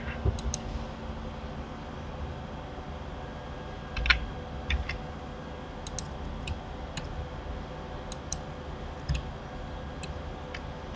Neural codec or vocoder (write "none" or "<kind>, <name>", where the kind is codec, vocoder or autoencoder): none